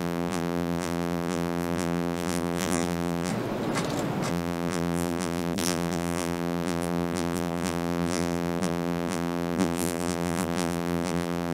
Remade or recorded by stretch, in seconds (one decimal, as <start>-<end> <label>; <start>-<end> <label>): 0.0-3.3 remade; 3.3-4.3 recorded; 4.3-11.5 remade